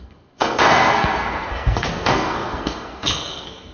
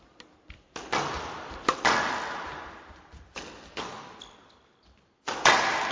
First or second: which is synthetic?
first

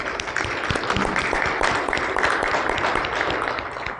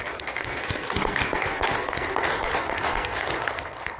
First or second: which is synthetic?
second